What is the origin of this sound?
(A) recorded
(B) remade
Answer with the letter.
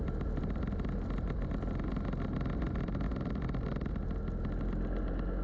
A